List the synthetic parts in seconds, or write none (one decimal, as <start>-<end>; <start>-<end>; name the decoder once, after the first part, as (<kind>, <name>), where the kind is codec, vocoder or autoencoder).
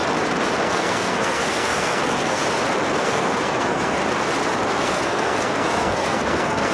0.6-2.4 (codec, SNAC); 3.0-4.0; 4.7-6.7